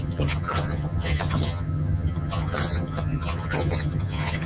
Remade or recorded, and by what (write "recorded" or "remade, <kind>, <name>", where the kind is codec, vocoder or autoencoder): remade, vocoder, HiFi-GAN